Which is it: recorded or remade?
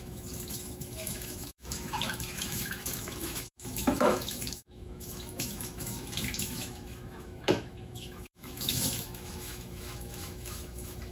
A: remade